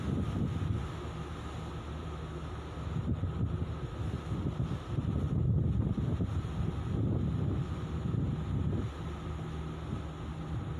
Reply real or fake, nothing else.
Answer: real